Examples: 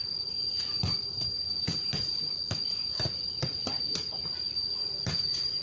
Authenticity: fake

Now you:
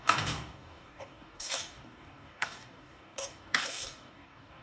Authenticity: fake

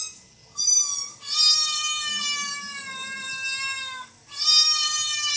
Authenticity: real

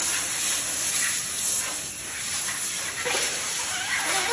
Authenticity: real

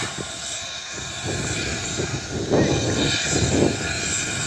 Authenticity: real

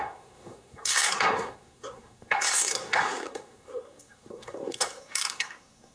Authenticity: fake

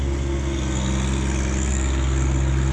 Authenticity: real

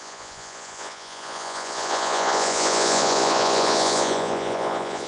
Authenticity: fake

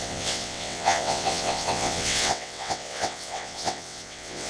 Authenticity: fake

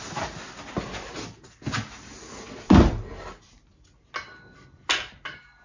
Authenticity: real